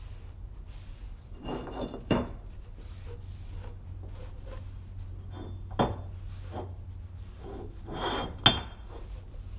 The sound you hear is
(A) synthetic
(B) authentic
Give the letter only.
B